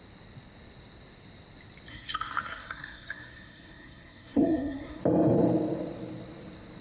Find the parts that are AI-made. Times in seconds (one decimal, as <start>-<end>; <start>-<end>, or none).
1.9-5.0